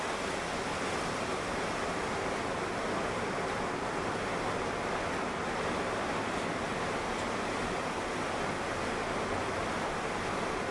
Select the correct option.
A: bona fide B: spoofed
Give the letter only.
A